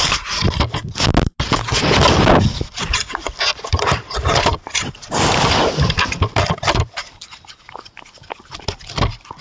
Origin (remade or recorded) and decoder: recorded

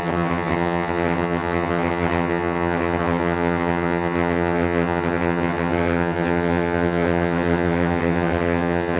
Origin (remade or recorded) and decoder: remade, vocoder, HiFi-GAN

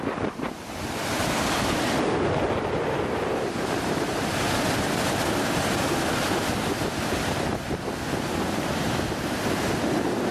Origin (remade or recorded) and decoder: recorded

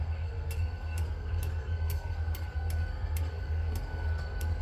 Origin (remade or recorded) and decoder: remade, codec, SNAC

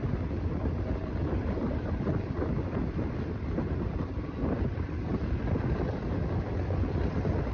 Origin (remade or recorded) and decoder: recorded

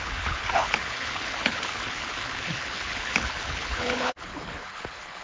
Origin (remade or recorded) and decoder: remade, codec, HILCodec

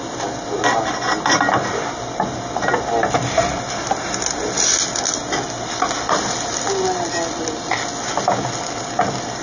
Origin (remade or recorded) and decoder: recorded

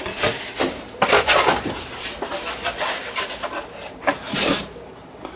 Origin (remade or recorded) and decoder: recorded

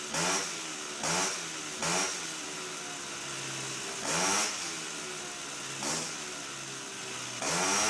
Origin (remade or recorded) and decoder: recorded